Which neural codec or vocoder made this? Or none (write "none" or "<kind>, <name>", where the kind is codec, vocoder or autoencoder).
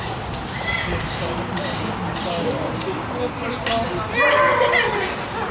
none